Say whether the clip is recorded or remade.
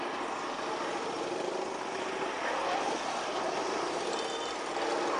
recorded